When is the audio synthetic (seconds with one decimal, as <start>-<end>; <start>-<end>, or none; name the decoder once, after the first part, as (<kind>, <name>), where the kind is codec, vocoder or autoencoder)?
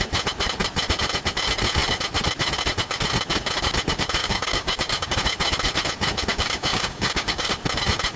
4.2-5.2 (codec, DAC); 6.3-7.5